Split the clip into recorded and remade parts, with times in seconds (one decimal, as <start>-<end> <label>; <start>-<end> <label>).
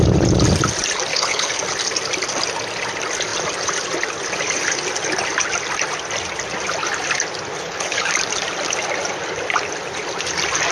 0.0-1.1 recorded; 1.1-1.6 remade; 1.6-7.6 recorded; 7.6-8.1 remade; 8.1-10.7 recorded